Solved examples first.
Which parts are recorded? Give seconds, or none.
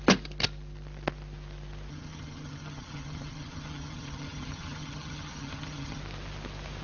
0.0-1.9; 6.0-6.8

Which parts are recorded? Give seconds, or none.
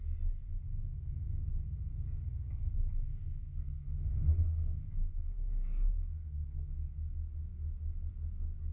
0.0-0.8; 2.7-3.1; 7.1-8.7